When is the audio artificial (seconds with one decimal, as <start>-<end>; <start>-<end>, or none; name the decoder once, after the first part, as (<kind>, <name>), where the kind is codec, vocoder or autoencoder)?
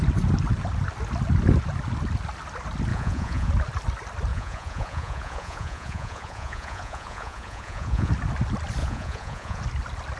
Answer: 2.9-3.5 (vocoder, Vocos); 4.3-8.1; 8.8-9.6